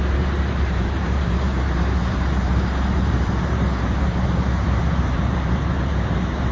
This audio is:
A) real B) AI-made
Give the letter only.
B